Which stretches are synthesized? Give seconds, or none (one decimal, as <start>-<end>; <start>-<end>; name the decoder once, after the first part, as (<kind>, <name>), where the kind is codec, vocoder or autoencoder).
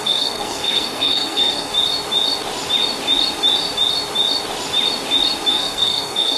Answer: 0.0-1.7 (codec, SNAC); 5.5-6.4